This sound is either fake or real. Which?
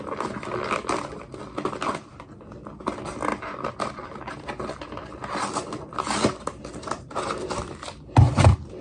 real